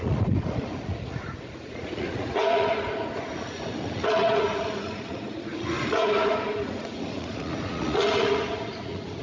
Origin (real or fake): fake